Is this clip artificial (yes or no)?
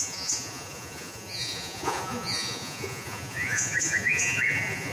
yes